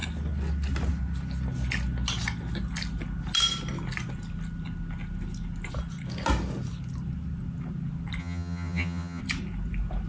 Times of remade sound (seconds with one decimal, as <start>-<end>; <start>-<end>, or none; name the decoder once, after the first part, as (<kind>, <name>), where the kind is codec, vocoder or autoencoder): 8.2-9.2 (vocoder, HiFi-GAN)